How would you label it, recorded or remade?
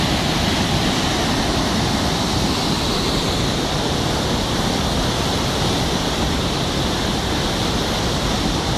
recorded